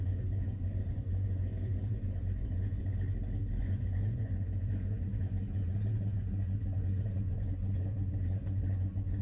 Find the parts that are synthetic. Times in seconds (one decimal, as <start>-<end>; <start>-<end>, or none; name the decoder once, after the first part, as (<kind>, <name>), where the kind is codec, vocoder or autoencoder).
0.0-2.9 (vocoder, Vocos); 3.6-9.2